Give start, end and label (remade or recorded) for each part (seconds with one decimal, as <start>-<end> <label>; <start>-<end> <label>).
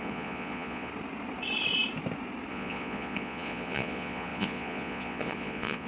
0.0-0.9 remade; 0.9-2.5 recorded; 2.5-5.9 remade